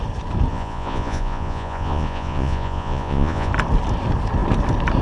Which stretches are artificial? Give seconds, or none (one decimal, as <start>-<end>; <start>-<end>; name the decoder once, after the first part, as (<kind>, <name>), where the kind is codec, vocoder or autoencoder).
0.5-3.5 (vocoder, Vocos)